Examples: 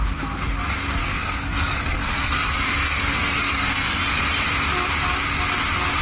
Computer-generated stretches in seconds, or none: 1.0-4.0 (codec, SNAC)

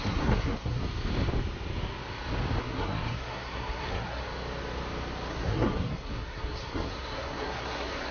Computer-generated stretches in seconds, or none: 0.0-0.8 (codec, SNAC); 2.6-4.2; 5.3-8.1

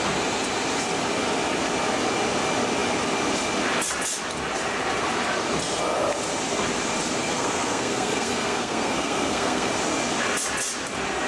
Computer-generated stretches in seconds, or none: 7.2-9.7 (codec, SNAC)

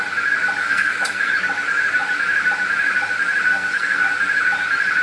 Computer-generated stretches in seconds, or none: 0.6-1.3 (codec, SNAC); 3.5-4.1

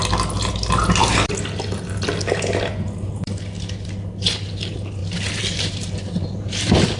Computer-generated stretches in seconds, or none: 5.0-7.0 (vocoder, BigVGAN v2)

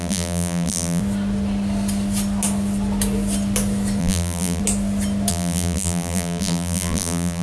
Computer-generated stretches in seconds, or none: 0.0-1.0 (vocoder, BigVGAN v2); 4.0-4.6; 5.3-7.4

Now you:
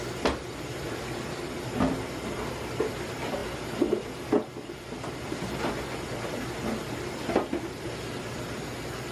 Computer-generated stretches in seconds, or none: none